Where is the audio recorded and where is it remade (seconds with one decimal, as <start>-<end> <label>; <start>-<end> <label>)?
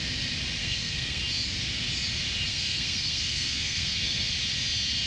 0.0-0.6 recorded; 0.6-1.2 remade; 1.2-2.5 recorded; 2.5-4.3 remade; 4.3-5.1 recorded